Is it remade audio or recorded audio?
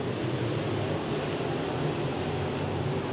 recorded